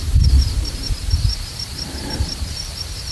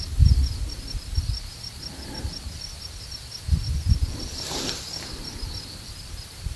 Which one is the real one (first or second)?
second